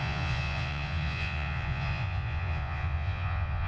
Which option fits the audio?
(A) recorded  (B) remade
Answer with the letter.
B